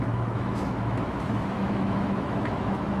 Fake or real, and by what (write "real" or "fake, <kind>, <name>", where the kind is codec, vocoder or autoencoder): fake, autoencoder, DAC-VAE